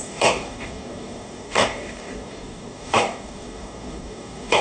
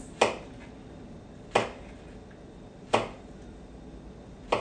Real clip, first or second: second